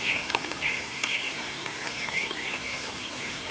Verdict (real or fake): fake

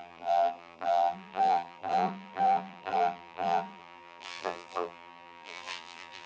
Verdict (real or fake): fake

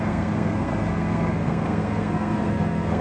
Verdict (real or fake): fake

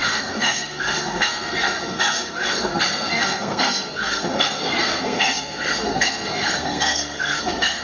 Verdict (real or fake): fake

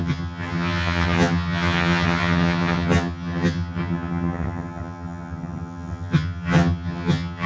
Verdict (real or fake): fake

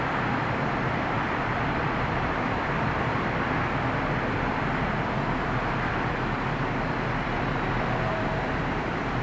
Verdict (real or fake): fake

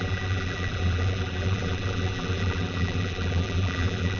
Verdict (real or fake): fake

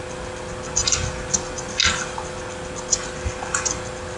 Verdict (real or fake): real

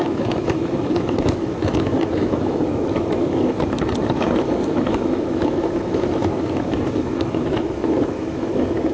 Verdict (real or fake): fake